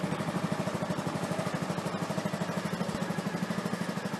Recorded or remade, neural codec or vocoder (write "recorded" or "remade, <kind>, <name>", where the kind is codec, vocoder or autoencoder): recorded